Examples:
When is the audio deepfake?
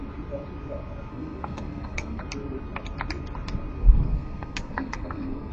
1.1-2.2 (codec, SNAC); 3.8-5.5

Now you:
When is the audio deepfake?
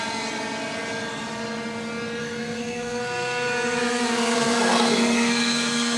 2.2-6.0 (codec, SNAC)